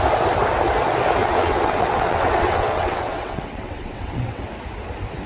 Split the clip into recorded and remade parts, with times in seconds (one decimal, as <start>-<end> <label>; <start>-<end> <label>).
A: 0.0-1.2 recorded; 1.2-4.4 remade; 4.4-5.3 recorded